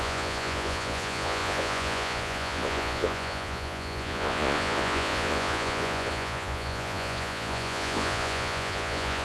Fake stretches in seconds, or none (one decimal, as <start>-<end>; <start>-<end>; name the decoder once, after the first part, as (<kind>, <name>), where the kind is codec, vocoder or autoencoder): 0.0-9.2 (vocoder, Vocos)